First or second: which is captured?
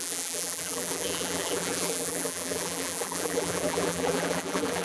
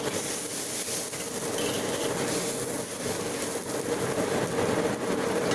second